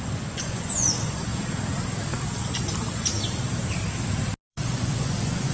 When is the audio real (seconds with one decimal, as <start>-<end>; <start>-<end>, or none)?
1.3-4.5